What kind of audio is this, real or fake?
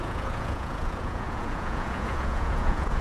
fake